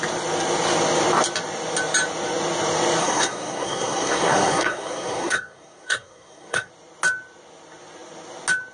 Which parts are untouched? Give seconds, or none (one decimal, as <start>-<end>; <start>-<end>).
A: 0.0-3.0; 6.7-8.7